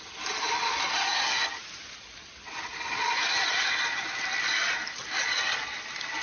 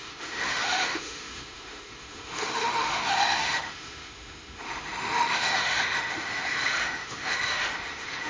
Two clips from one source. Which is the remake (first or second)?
second